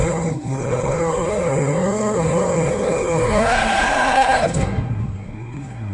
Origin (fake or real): fake